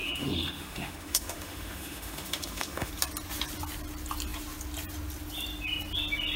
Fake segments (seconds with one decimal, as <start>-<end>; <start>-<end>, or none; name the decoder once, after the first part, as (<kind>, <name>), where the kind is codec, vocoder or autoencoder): 0.0-2.9 (autoencoder, DAC-VAE)